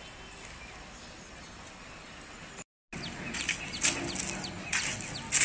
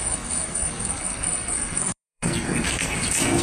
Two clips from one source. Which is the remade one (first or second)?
second